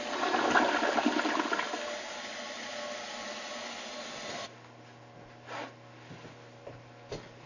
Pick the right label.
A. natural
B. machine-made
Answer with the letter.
A